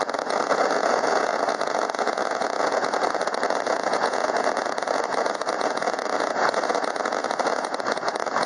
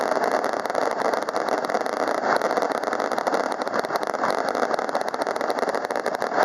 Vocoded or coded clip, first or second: first